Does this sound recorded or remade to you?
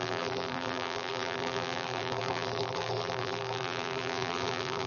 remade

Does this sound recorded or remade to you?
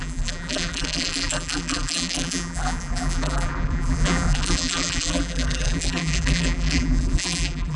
remade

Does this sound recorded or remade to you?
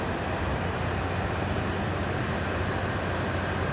recorded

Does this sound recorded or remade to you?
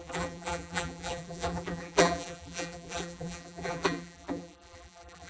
remade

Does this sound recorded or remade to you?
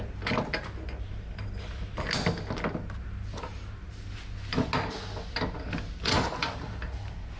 recorded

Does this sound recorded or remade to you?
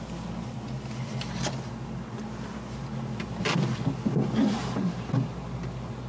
recorded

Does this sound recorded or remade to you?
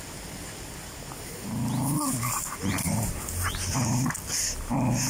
recorded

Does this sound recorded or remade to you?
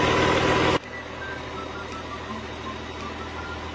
recorded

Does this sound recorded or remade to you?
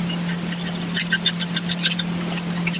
remade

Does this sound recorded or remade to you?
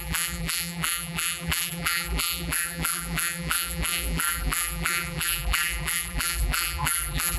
remade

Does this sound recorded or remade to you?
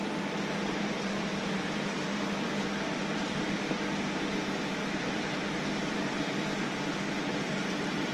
remade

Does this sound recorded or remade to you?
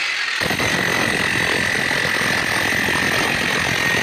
recorded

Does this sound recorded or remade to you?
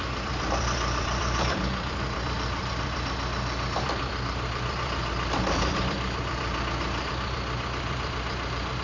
remade